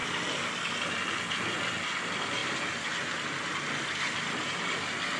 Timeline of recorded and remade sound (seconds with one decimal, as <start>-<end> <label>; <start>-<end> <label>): 0.0-5.2 recorded